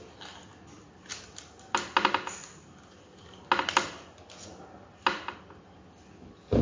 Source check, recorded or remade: recorded